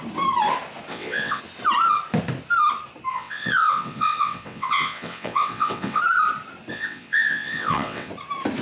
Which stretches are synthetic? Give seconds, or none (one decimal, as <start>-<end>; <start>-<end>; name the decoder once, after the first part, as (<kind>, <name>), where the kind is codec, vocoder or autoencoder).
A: 0.9-1.4 (vocoder, WaveNeXt); 3.1-6.0; 6.7-8.1